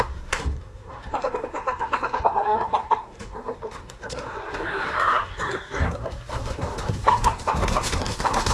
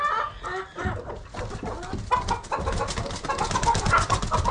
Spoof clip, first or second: first